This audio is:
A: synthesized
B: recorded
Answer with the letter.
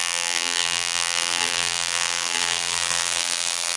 A